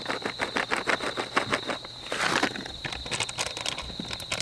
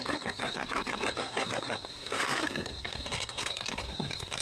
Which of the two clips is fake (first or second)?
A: second